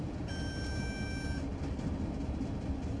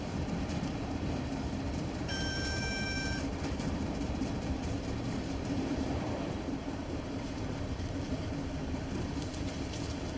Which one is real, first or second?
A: first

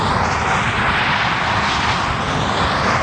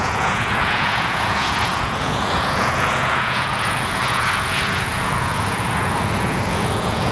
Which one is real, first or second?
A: first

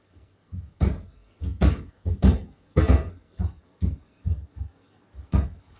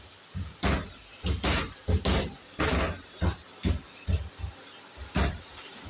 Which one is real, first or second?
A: second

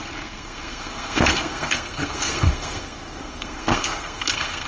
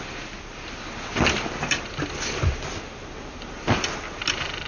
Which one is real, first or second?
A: second